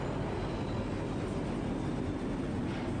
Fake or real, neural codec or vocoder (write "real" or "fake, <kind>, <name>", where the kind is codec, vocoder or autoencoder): real